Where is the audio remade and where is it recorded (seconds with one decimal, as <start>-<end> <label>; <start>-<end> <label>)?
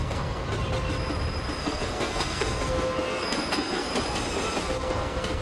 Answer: 0.0-0.4 remade; 0.4-1.6 recorded; 1.6-3.9 remade; 3.9-4.6 recorded; 4.6-5.4 remade